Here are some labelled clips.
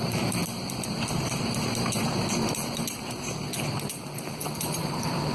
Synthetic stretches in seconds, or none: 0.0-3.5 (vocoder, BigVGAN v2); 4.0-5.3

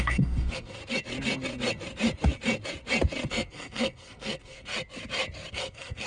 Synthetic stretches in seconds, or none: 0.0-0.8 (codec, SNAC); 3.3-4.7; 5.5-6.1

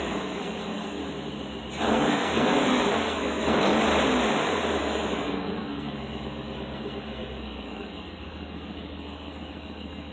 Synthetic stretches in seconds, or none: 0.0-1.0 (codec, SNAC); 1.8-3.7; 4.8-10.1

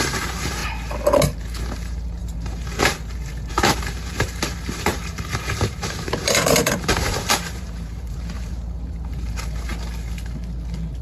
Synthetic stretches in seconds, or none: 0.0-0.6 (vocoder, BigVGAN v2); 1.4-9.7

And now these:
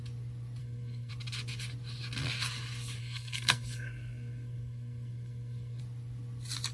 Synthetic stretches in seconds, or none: 0.6-1.1 (codec, SNAC); 3.0-5.8

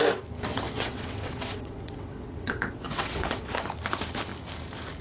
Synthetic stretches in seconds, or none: 0.5-3.5 (vocoder, WaveNeXt)

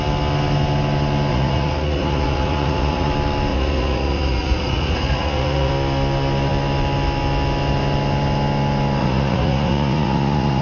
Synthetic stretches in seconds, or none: 1.3-3.1 (vocoder, Vocos); 3.5-5.7; 9.0-10.6

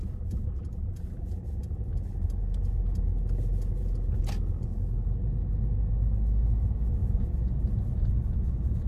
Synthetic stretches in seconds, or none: 7.0-8.9 (vocoder, BigVGAN v2)